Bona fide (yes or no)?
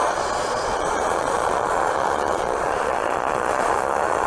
no